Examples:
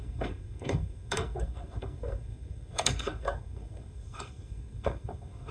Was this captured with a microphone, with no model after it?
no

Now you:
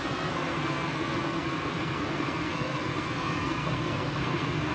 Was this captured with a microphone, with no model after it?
no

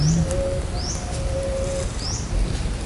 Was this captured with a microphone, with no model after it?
yes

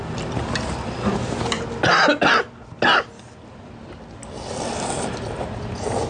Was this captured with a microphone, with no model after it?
yes